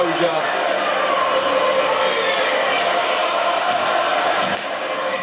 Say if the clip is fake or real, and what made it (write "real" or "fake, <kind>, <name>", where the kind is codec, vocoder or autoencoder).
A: real